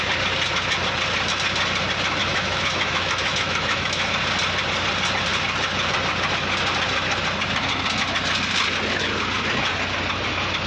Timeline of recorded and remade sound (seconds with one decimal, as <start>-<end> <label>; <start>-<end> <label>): 0.0-2.2 recorded; 2.2-4.0 remade; 4.0-10.7 recorded